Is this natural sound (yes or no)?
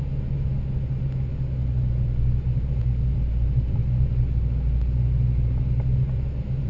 yes